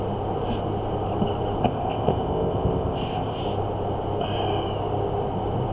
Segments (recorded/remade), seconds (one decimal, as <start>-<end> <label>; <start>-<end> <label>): 0.0-1.6 recorded; 1.6-3.4 remade; 3.4-5.7 recorded